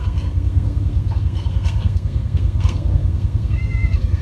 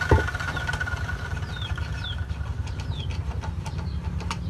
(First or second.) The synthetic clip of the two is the first